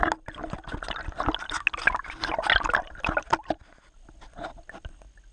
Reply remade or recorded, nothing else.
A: recorded